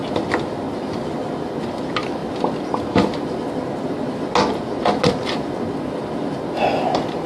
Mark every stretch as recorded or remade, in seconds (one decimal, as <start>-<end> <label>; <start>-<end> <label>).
0.0-7.3 recorded